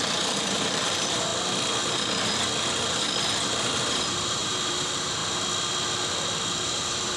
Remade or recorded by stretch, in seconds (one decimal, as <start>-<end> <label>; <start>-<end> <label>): 0.0-1.3 remade; 1.3-3.9 recorded; 3.9-5.2 remade; 5.2-6.5 recorded; 6.5-7.2 remade